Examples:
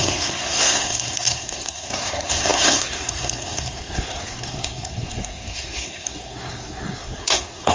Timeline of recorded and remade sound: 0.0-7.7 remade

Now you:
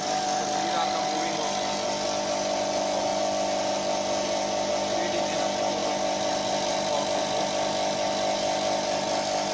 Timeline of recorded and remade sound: 0.0-9.5 recorded

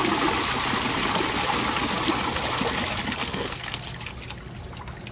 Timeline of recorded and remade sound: 0.0-3.2 recorded; 3.2-3.8 remade; 3.8-5.1 recorded

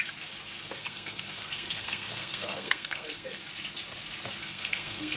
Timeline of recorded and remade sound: 0.0-0.8 recorded; 0.8-3.4 remade; 3.4-4.4 recorded; 4.4-5.2 remade

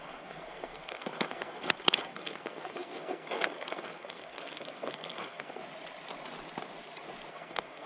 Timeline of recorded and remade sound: 0.0-5.6 remade; 5.6-7.3 recorded; 7.3-7.9 remade